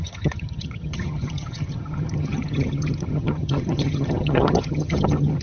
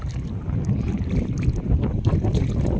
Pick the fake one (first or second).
first